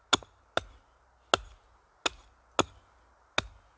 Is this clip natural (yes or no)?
yes